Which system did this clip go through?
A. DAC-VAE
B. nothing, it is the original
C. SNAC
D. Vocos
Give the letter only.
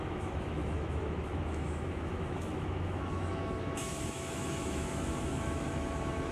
A